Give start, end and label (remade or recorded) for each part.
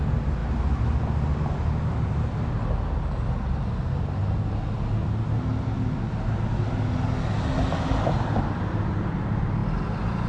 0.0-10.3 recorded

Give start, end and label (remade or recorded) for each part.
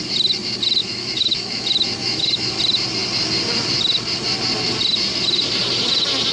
0.0-0.8 recorded; 0.8-1.6 remade; 1.6-2.0 recorded; 2.0-2.5 remade; 2.5-6.3 recorded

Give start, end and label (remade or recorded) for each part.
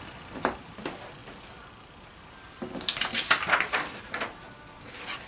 0.0-5.3 recorded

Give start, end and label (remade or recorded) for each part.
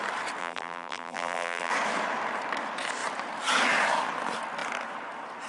0.0-0.4 recorded; 0.4-1.7 remade; 1.7-5.5 recorded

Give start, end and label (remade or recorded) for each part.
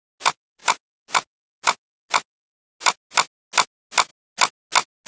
0.0-5.1 recorded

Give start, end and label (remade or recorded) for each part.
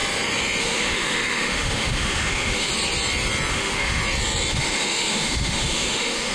0.0-0.6 recorded; 0.6-2.7 remade; 2.7-3.5 recorded; 3.5-4.0 remade; 4.0-4.5 recorded; 4.5-6.3 remade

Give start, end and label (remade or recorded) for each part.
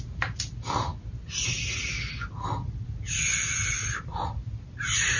0.0-5.2 recorded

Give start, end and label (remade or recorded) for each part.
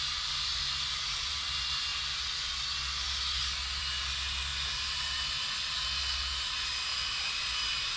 0.0-6.9 recorded; 6.9-7.4 remade; 7.4-8.0 recorded